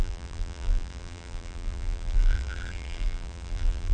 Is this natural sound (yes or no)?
no